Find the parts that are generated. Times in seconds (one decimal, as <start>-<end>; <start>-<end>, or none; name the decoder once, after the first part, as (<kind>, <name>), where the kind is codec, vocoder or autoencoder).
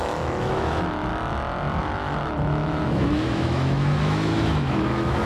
0.0-1.1 (autoencoder, DAC-VAE); 1.8-5.3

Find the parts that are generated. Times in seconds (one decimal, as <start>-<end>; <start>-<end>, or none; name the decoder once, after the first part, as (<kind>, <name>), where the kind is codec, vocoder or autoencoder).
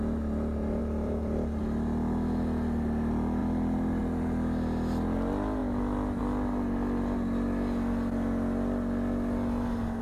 0.8-1.6 (vocoder, BigVGAN v2); 3.4-4.0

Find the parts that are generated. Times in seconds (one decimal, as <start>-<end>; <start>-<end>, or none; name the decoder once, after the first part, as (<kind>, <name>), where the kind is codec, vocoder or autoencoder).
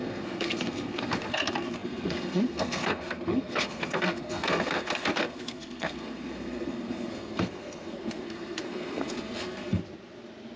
0.0-9.8 (codec, SNAC)